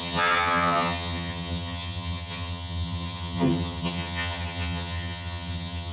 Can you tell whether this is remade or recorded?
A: remade